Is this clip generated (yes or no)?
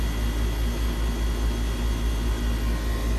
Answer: no